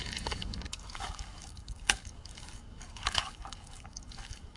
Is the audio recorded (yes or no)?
no